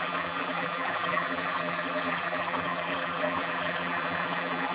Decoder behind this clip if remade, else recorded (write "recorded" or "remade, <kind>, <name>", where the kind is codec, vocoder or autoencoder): remade, vocoder, BigVGAN v2